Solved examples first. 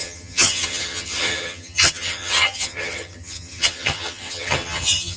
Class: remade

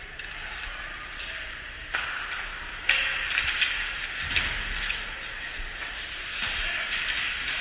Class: recorded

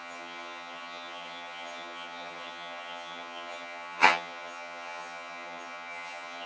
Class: remade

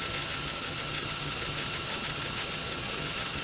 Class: remade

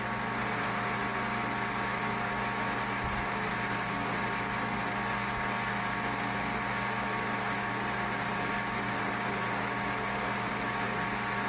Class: recorded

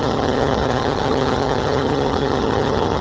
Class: remade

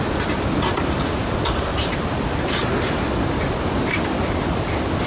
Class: recorded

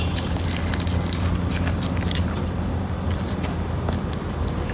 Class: recorded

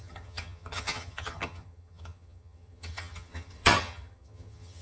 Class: remade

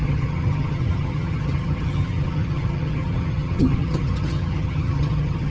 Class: remade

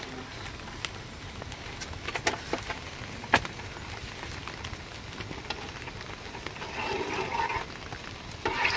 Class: recorded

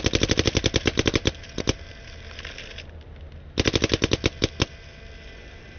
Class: recorded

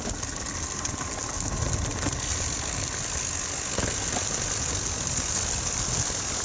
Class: recorded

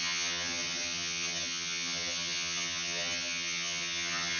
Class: remade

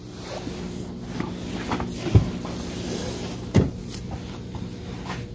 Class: recorded